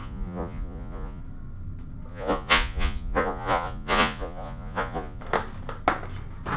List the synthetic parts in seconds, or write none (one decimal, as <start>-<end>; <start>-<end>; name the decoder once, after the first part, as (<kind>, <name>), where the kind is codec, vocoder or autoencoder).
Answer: 0.0-1.2 (vocoder, Vocos); 2.1-5.2